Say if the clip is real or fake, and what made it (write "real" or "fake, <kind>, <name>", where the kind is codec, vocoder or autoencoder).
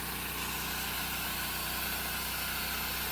real